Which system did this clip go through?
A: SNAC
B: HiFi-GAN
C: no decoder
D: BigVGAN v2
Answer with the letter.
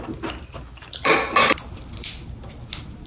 C